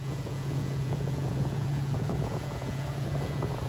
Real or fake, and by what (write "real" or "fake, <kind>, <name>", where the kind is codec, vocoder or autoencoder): fake, vocoder, Vocos